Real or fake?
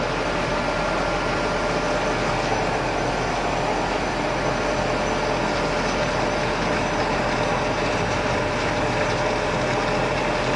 real